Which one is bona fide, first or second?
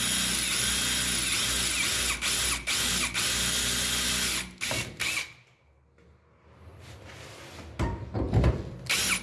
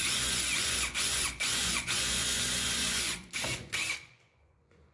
first